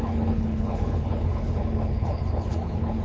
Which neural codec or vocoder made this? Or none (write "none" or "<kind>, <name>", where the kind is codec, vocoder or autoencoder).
codec, HILCodec